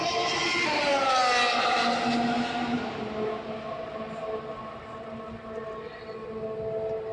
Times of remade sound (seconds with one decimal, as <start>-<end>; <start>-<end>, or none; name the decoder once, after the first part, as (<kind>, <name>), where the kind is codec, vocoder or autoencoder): none